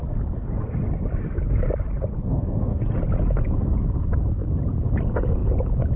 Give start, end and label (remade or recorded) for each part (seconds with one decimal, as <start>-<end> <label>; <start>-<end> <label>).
0.0-2.2 recorded; 2.2-2.8 remade; 2.8-6.0 recorded

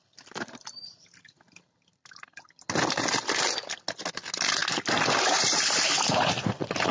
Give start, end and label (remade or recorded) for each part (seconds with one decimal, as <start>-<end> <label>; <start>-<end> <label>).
0.0-6.9 recorded